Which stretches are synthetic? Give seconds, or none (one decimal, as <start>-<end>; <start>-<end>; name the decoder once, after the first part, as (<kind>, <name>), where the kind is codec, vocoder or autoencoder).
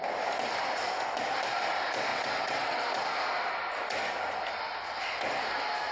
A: 2.1-2.8 (vocoder, WaveNeXt)